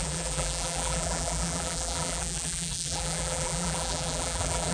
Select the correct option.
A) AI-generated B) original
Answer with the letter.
A